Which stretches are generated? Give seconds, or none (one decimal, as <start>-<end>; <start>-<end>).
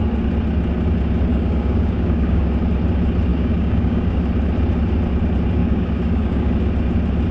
1.3-2.5; 3.3-4.2; 5.6-6.5